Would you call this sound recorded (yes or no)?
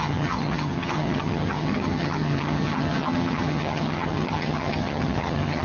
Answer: no